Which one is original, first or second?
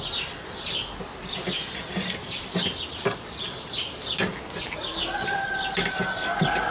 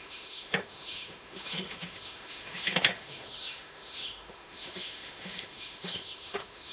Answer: first